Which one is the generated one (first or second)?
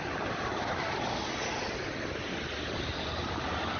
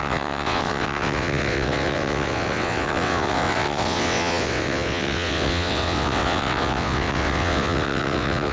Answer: second